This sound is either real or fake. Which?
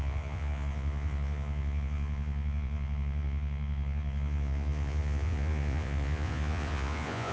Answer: fake